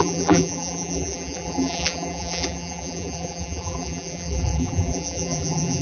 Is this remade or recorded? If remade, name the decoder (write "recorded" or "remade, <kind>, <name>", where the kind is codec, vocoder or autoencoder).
remade, vocoder, BigVGAN v2